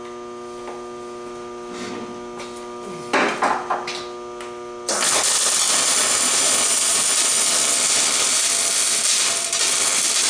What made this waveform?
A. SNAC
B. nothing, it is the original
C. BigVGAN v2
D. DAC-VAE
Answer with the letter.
B